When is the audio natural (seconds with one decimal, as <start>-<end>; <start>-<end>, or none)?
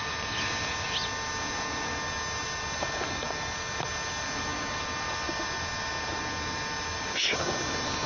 0.0-8.1